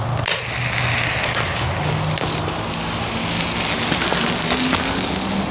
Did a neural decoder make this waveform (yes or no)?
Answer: no